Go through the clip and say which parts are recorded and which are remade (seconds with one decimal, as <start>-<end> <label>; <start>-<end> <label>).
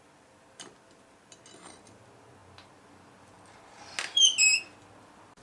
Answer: 0.0-5.4 recorded